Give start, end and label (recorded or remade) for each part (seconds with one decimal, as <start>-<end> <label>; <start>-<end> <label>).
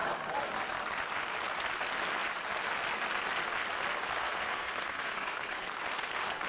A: 0.0-4.2 recorded; 4.2-5.7 remade; 5.7-6.5 recorded